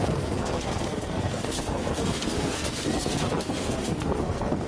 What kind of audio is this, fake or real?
fake